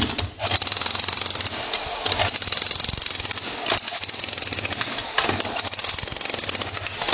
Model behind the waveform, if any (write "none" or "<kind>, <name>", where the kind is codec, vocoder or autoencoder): none